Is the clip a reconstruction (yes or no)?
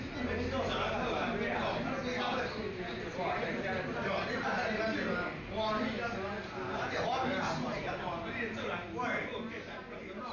no